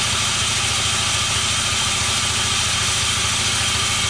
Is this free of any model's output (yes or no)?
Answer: yes